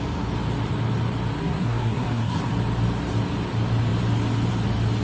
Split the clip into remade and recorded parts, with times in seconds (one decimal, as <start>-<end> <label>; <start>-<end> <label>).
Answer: 0.0-1.4 recorded; 1.4-2.5 remade; 2.5-5.0 recorded